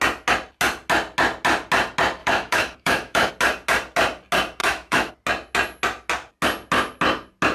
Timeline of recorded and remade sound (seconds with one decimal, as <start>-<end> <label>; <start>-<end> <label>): 0.0-2.2 recorded; 2.2-3.3 remade; 3.3-4.6 recorded; 4.6-5.1 remade; 5.1-7.5 recorded